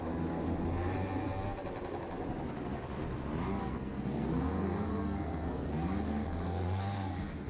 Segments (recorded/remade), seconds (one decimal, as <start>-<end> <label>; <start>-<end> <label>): 0.0-3.6 recorded; 3.6-7.5 remade